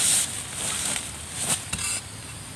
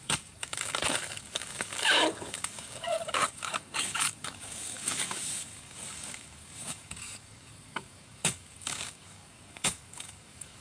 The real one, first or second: first